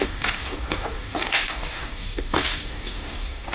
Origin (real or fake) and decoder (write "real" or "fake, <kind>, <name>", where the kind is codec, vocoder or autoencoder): fake, codec, DAC